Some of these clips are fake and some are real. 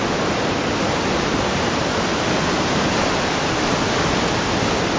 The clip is real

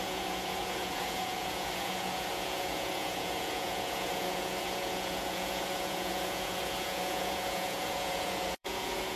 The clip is fake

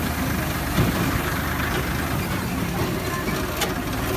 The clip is real